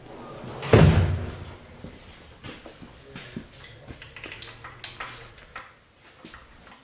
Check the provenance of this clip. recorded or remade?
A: recorded